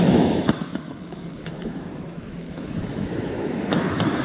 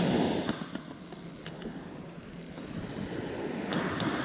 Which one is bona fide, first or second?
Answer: second